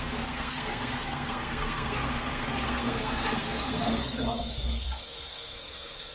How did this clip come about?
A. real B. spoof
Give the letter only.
B